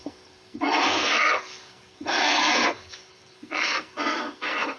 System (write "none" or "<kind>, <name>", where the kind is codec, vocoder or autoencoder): codec, SNAC